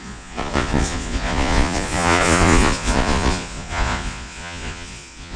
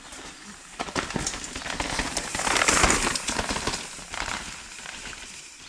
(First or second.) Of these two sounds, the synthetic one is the first